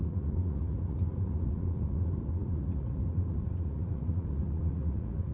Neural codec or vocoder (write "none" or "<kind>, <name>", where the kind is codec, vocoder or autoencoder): vocoder, Vocos